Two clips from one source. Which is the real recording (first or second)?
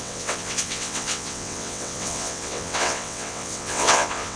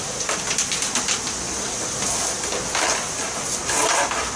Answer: second